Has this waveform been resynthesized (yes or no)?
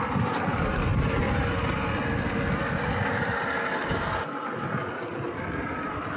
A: no